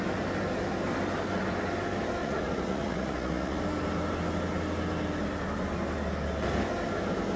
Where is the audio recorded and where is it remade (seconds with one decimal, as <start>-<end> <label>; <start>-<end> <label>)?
0.0-2.2 recorded; 2.2-3.6 remade; 3.6-7.4 recorded